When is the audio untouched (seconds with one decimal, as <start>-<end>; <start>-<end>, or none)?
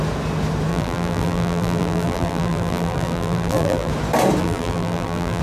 0.0-0.7; 3.9-4.4